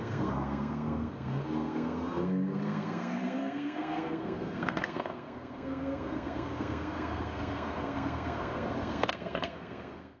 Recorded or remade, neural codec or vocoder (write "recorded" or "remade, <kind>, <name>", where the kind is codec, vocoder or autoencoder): remade, codec, SNAC